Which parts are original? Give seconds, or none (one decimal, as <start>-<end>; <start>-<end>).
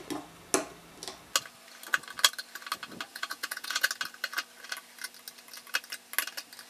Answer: 0.0-3.1; 3.9-6.7